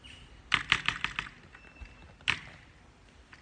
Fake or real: real